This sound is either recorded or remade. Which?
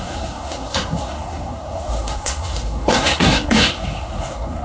remade